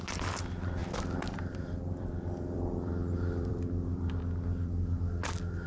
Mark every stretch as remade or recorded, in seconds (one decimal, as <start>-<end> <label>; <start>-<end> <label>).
0.0-0.8 recorded; 0.8-4.2 remade; 4.2-5.7 recorded